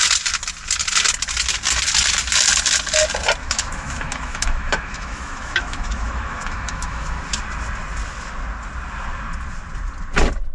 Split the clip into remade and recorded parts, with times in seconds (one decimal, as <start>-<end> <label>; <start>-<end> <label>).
0.0-3.4 recorded; 3.4-7.2 remade; 7.2-10.5 recorded